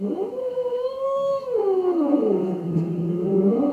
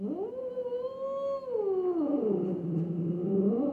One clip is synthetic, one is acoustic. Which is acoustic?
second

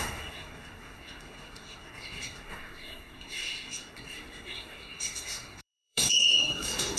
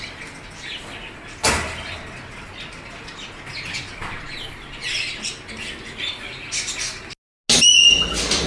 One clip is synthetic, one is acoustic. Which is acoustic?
second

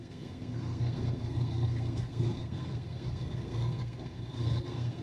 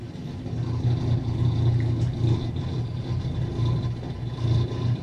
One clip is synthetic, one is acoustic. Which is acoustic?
second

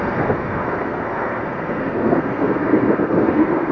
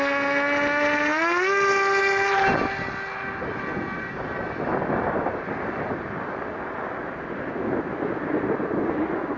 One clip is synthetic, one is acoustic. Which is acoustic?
second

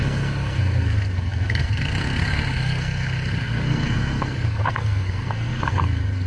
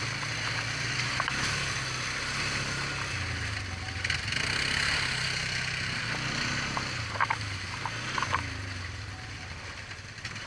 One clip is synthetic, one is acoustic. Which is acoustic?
second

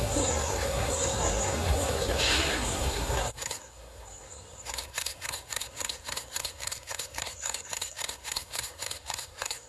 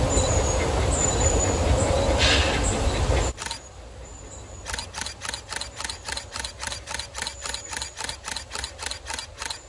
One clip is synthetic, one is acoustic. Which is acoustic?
second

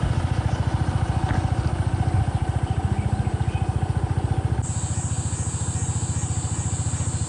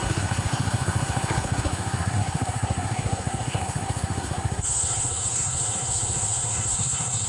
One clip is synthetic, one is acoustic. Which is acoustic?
first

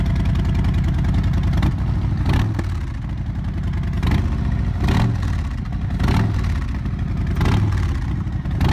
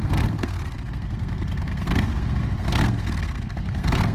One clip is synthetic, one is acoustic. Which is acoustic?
first